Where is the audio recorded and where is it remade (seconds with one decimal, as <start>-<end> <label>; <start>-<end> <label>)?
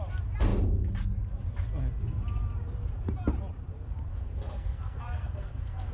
0.0-4.1 recorded; 4.1-5.9 remade